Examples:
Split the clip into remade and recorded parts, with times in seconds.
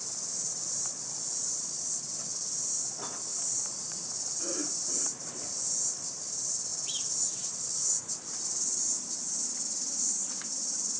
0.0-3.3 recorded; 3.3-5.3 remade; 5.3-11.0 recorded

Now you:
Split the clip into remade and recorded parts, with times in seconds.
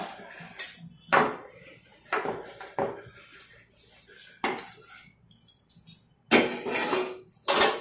0.0-7.8 recorded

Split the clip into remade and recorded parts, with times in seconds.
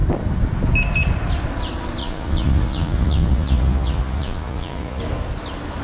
0.0-2.0 recorded; 2.0-5.0 remade; 5.0-5.8 recorded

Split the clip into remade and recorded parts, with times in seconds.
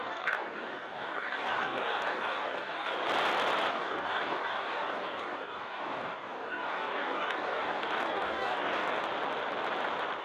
0.0-3.0 remade; 3.0-3.7 recorded; 3.7-9.0 remade; 9.0-10.2 recorded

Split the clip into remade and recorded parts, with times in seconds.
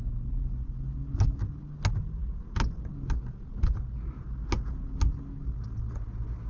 0.0-6.5 recorded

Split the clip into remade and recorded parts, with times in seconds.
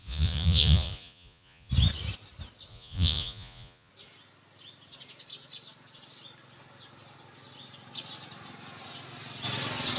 0.0-1.7 remade; 1.7-2.7 recorded; 2.7-3.9 remade; 3.9-10.0 recorded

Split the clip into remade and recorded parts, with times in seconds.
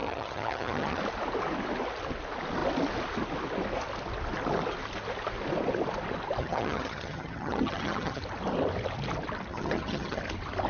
0.0-1.0 remade; 1.0-6.4 recorded; 6.4-8.2 remade; 8.2-9.5 recorded; 9.5-10.2 remade; 10.2-10.7 recorded